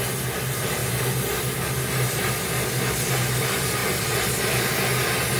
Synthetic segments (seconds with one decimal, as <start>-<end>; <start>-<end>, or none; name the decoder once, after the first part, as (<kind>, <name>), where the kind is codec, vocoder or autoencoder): none